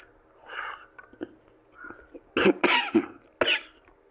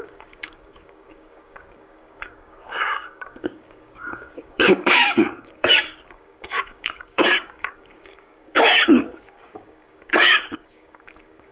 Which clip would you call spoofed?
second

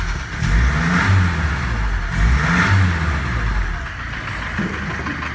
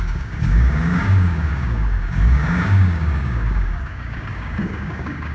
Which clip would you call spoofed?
second